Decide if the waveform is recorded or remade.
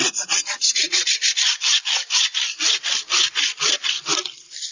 recorded